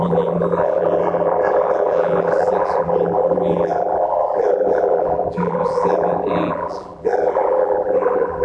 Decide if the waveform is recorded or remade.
remade